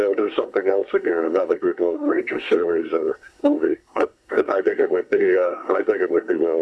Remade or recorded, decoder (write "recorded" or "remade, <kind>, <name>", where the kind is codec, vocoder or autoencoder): remade, codec, SNAC